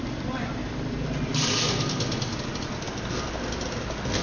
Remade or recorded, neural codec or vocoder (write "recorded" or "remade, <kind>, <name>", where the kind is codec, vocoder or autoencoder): recorded